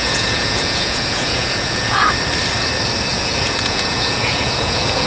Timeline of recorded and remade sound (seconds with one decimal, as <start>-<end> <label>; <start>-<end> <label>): 0.0-2.1 remade; 2.1-3.1 recorded; 3.1-5.1 remade